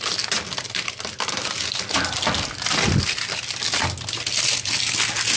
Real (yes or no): yes